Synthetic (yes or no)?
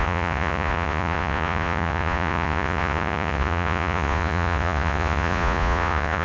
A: yes